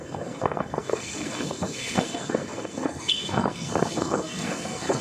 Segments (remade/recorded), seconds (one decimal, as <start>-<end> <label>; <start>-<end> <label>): 0.0-5.0 remade